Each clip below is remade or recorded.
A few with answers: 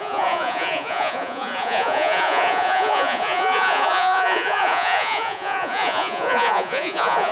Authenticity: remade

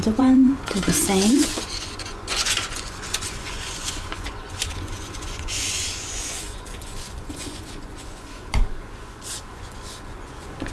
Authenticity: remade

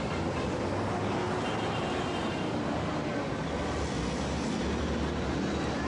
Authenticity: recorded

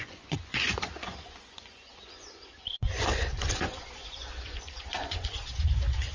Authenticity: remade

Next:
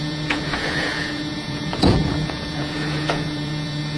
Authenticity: remade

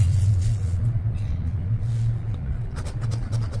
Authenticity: remade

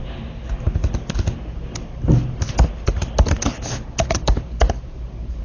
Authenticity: recorded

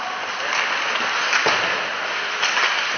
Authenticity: recorded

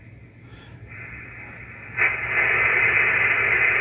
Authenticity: recorded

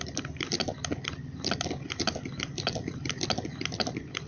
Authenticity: recorded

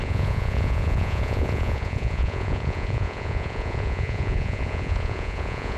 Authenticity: remade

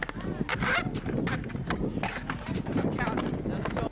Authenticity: recorded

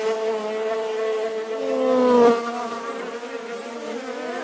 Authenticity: recorded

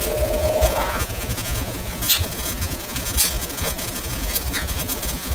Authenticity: remade